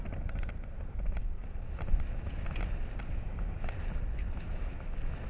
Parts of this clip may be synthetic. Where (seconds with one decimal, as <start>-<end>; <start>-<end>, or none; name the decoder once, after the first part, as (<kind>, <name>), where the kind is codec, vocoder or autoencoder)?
none